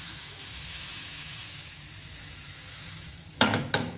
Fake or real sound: fake